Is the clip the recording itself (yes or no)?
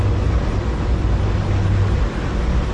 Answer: yes